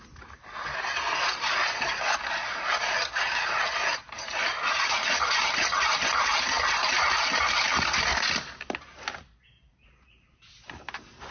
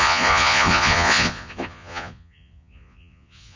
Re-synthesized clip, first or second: second